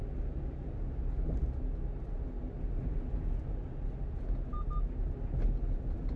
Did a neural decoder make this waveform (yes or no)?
no